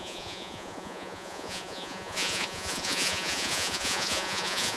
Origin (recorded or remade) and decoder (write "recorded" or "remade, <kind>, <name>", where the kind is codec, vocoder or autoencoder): remade, vocoder, Vocos